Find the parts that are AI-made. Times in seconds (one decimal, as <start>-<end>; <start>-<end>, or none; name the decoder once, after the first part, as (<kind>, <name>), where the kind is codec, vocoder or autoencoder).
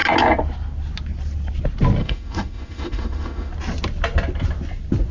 2.0-3.5 (autoencoder, DAC-VAE)